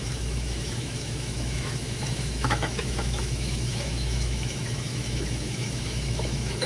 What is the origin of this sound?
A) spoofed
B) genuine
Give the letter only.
A